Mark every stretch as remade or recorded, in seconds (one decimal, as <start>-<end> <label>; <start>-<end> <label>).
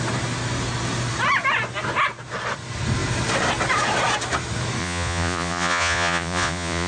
0.0-4.8 recorded; 4.8-6.9 remade